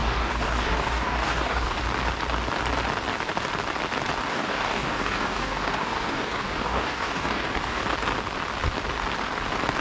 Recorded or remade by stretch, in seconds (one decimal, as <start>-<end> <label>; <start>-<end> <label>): 0.0-1.8 remade; 1.8-4.3 recorded; 4.3-7.8 remade; 7.8-9.8 recorded